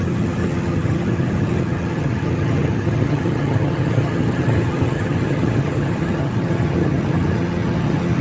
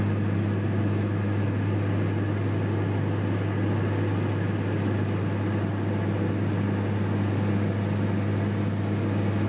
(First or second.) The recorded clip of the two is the second